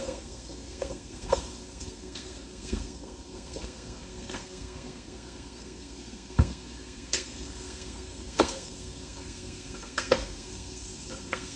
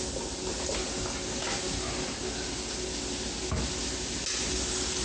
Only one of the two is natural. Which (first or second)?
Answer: second